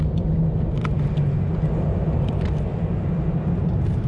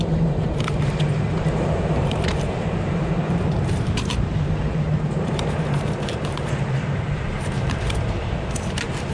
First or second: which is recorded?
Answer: first